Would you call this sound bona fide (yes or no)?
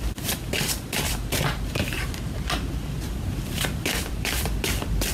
no